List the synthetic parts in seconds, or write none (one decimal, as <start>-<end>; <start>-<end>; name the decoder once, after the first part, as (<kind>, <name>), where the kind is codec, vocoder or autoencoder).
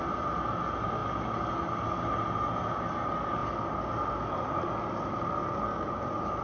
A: none